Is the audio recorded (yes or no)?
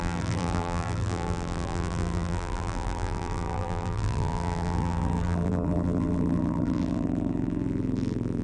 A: no